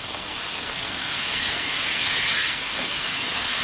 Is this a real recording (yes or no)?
no